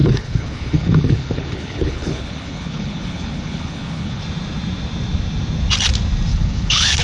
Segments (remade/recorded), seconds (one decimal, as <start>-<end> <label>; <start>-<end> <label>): 0.0-4.2 remade; 4.2-6.3 recorded; 6.3-7.0 remade